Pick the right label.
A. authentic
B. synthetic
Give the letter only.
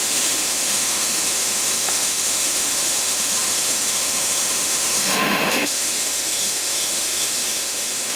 B